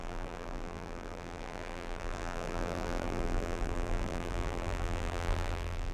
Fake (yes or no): yes